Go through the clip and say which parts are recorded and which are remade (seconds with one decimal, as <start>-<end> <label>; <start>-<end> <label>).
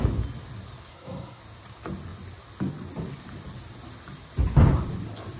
0.0-0.9 recorded; 0.9-1.4 remade; 1.4-5.4 recorded